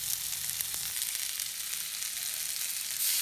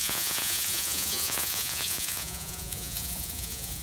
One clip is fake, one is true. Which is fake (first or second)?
second